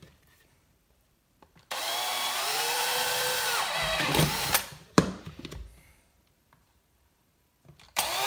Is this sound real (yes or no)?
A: no